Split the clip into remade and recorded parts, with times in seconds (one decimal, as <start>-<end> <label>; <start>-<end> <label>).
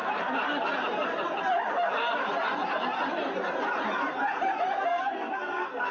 0.0-4.9 recorded; 4.9-5.9 remade